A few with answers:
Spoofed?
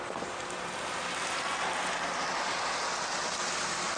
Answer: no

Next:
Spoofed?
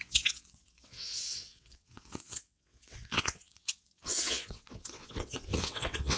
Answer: yes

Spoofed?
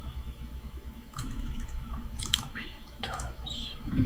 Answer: yes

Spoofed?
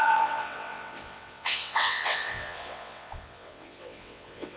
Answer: yes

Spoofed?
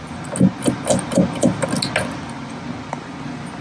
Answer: no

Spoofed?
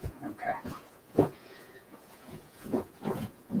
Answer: yes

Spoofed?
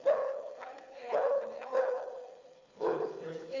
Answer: yes